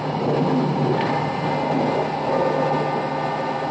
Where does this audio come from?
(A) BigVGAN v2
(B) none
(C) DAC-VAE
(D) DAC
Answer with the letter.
B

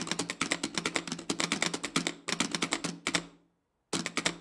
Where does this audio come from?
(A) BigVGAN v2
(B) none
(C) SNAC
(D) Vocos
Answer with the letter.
B